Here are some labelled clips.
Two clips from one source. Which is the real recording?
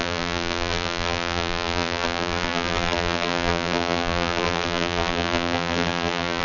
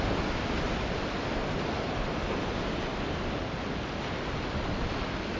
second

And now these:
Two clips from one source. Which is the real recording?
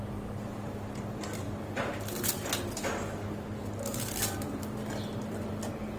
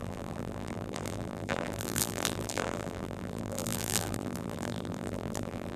first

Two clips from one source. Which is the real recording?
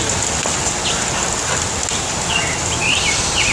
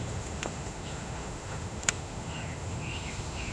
first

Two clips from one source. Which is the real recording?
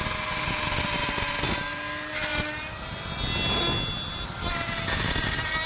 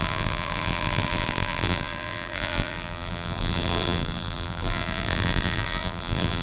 first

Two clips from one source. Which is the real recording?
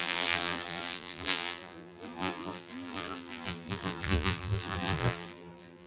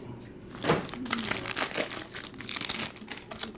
second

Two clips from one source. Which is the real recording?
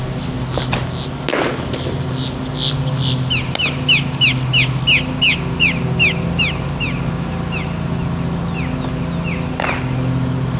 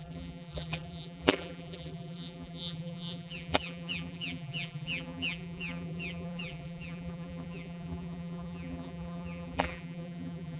first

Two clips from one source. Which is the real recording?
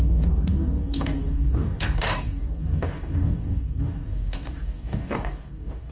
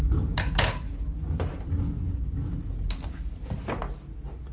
second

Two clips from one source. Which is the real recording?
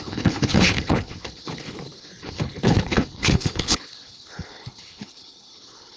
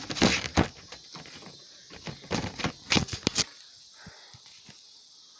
second